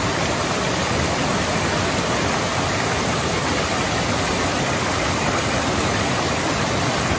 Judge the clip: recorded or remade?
recorded